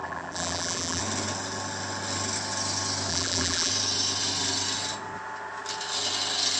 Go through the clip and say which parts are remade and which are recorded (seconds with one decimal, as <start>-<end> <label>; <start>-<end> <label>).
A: 0.0-1.0 remade; 1.0-3.1 recorded; 3.1-3.7 remade; 3.7-6.6 recorded